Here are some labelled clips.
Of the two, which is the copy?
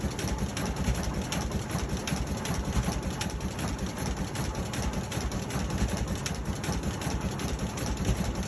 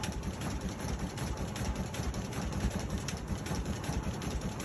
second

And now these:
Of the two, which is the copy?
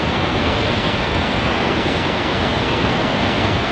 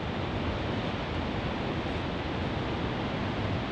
first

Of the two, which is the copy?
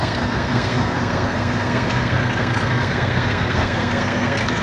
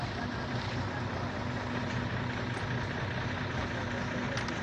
first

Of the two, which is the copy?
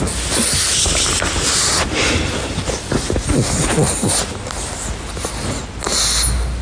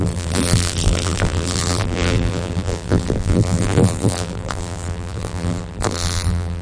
second